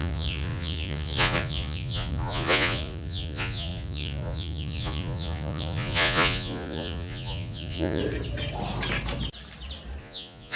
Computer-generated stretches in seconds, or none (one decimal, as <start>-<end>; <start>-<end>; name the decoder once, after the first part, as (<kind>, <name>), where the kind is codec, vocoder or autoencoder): 0.0-8.0 (vocoder, Vocos); 10.0-10.6